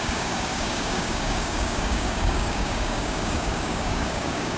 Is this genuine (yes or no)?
no